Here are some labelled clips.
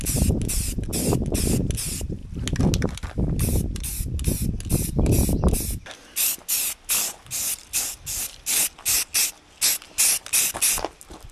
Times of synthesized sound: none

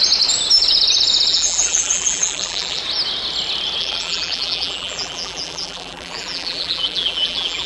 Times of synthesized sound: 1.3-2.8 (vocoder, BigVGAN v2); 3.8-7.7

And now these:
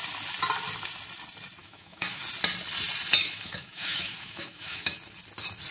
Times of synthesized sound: 1.6-2.2 (autoencoder, DAC-VAE); 3.2-4.9

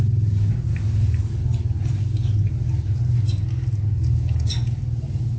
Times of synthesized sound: none

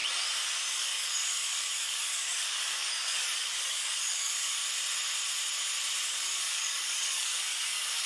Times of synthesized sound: 0.7-4.6 (codec, DAC); 6.1-8.1

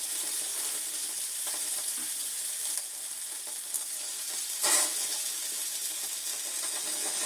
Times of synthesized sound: 0.0-0.5 (vocoder, BigVGAN v2); 1.3-2.6

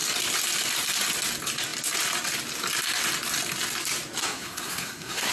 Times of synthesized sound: 4.2-5.3 (codec, SNAC)

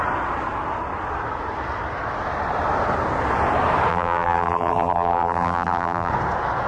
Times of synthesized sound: 3.9-6.1 (vocoder, BigVGAN v2)